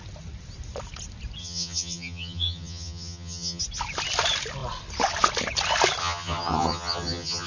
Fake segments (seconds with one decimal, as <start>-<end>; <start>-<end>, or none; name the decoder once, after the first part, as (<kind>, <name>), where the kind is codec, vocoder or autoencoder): 1.4-3.6 (vocoder, HiFi-GAN); 6.0-7.5